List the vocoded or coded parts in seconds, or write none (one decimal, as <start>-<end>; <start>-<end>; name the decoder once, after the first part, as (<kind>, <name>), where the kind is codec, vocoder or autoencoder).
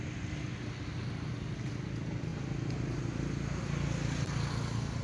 none